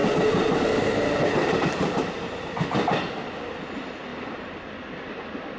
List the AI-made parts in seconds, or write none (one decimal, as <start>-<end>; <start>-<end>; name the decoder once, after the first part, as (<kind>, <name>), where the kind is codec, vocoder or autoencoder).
none